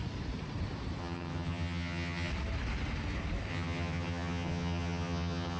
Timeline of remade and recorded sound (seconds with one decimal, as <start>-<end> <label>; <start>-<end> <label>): 0.0-1.0 recorded; 1.0-2.3 remade; 2.3-3.5 recorded; 3.5-5.6 remade